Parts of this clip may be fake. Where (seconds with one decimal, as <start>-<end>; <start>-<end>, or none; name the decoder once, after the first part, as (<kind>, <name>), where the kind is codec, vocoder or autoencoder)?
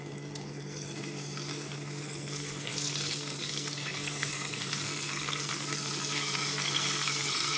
0.0-7.6 (codec, SNAC)